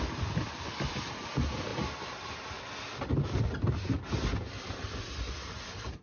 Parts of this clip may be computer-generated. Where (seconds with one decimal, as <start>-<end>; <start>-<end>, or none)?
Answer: none